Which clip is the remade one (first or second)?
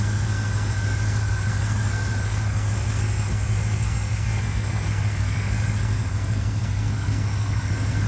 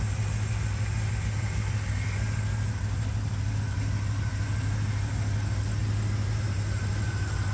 first